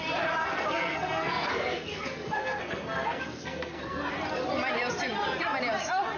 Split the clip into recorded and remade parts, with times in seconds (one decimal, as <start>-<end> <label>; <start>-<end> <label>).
0.0-0.4 recorded; 0.4-4.1 remade; 4.1-6.2 recorded